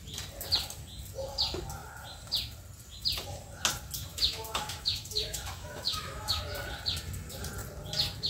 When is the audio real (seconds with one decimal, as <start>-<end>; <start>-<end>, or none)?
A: 0.0-4.1; 6.4-8.3